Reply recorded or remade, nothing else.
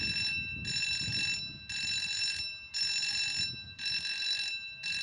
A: recorded